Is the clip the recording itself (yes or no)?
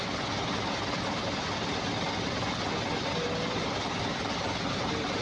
yes